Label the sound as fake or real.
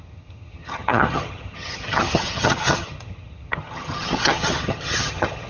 fake